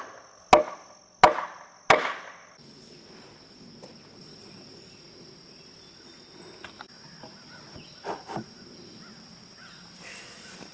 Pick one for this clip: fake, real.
real